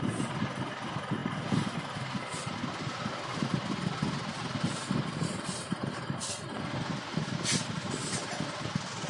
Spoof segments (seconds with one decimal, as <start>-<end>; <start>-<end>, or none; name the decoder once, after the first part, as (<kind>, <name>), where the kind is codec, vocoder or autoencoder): none